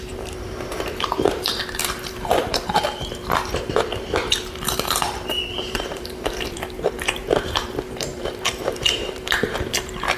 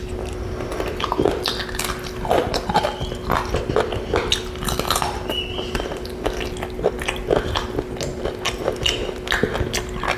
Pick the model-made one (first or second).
first